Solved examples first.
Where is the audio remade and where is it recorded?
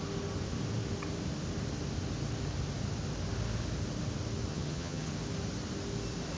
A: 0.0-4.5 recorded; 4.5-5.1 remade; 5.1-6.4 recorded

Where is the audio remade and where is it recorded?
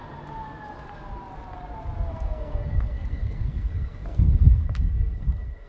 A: 0.0-2.1 recorded; 2.1-5.7 remade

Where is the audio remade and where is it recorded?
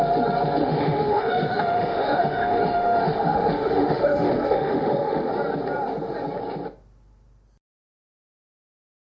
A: 0.0-0.6 recorded; 0.6-5.3 remade; 5.3-9.2 recorded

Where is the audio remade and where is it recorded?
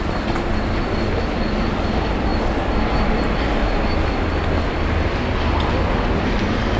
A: 0.0-2.3 remade; 2.3-2.9 recorded; 2.9-3.6 remade; 3.6-6.8 recorded